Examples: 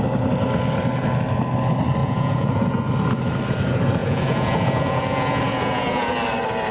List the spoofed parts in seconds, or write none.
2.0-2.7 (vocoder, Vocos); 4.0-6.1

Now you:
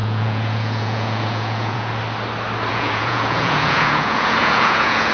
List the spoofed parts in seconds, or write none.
0.0-2.0 (vocoder, Vocos); 2.7-5.1

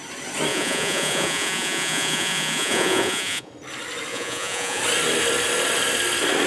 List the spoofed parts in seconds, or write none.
0.5-3.5 (vocoder, Vocos); 4.1-4.8